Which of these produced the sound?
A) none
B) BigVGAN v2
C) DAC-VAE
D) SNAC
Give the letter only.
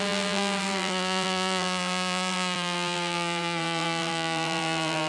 B